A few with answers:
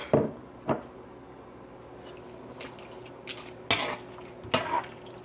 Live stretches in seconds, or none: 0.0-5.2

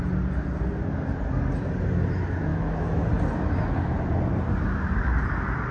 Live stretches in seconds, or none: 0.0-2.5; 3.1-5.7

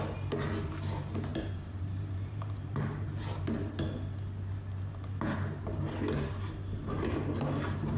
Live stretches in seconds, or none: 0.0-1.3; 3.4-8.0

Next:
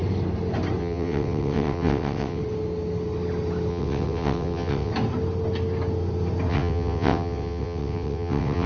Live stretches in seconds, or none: 0.0-0.8; 2.4-3.7; 4.9-6.5

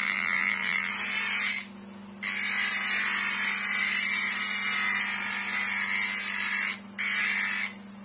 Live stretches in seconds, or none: 0.9-8.0

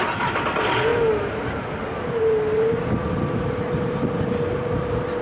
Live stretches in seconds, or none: 0.0-5.2

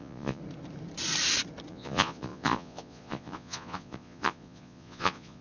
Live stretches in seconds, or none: 0.4-1.7

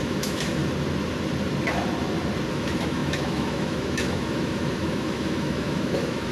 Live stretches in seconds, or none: 0.6-2.5